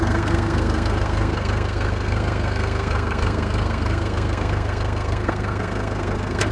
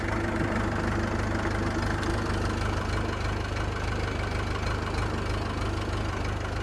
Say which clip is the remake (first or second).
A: first